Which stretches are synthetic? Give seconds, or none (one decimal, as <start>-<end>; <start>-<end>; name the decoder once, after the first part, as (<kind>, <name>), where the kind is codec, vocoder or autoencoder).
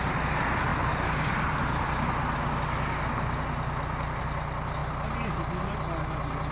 none